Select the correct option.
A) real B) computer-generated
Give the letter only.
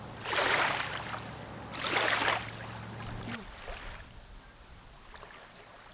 A